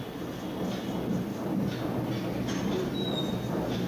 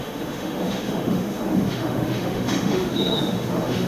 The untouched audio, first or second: first